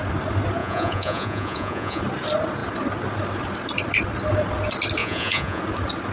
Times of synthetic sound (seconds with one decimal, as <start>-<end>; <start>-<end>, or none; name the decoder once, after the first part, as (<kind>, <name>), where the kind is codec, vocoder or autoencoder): 0.6-2.0 (vocoder, Vocos); 5.0-5.6